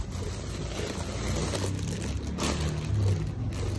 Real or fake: real